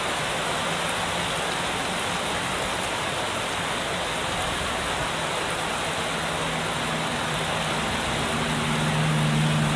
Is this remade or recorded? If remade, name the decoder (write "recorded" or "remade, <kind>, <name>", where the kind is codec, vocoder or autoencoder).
recorded